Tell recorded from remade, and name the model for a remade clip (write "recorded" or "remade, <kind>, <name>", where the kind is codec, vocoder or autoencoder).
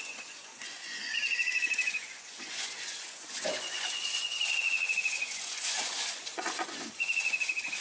remade, vocoder, Vocos